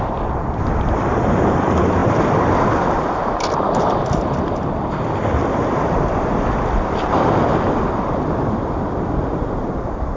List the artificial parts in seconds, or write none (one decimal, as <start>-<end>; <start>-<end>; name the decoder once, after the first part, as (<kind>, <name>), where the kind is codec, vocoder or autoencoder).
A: none